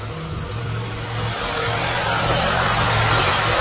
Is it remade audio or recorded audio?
recorded